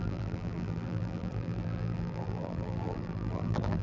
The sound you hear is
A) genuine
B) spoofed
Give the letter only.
B